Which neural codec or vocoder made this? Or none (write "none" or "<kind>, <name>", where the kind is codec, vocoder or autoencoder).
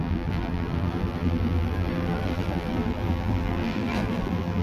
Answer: vocoder, BigVGAN v2